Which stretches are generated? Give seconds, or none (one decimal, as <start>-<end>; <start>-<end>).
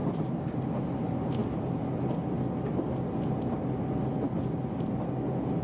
0.0-0.8